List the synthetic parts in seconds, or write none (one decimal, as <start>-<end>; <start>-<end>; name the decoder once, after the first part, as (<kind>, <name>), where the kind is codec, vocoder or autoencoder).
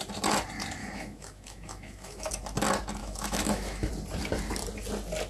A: 0.8-2.3 (autoencoder, DAC-VAE); 3.0-3.9